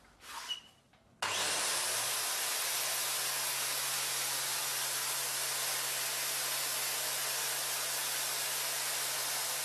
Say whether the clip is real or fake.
real